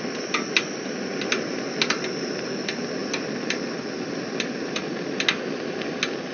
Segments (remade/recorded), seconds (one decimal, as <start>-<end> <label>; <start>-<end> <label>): 0.0-6.3 recorded